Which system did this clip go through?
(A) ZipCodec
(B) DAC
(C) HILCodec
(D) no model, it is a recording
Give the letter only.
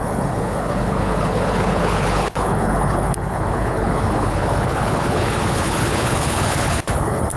C